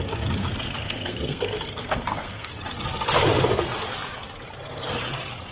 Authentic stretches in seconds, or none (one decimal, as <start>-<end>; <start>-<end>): 0.0-0.4; 2.5-5.5